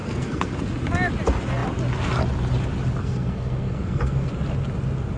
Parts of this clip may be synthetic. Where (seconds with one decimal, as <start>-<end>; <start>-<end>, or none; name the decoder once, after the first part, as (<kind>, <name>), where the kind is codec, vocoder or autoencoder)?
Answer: 0.0-0.6 (codec, SNAC); 3.0-4.3